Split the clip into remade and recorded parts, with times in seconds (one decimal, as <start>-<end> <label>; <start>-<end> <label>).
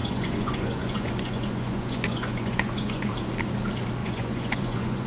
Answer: 0.0-3.1 remade; 3.1-4.0 recorded; 4.0-5.1 remade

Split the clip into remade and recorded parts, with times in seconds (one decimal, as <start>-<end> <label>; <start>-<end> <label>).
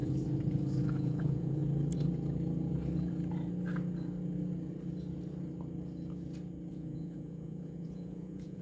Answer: 0.0-1.0 recorded; 1.0-1.6 remade; 1.6-6.7 recorded; 6.7-8.6 remade